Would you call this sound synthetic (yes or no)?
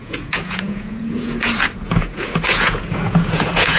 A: yes